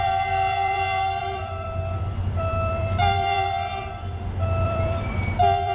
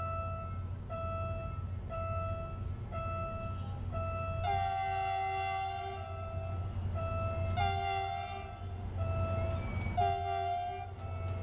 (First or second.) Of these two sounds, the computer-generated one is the first